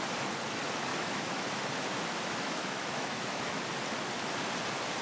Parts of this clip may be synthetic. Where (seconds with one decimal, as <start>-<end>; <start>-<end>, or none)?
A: 0.9-1.6; 2.2-3.6